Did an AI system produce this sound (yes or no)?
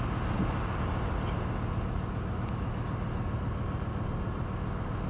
no